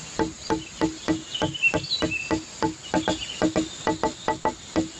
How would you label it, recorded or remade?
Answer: recorded